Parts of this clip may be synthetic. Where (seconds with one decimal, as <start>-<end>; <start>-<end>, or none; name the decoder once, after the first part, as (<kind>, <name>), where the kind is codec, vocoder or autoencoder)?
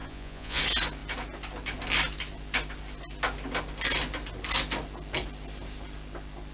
0.0-0.6 (vocoder, Vocos)